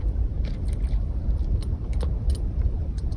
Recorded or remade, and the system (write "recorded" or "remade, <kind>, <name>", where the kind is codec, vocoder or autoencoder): remade, vocoder, BigVGAN v2